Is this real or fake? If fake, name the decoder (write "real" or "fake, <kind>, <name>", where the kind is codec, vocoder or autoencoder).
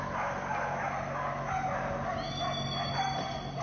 real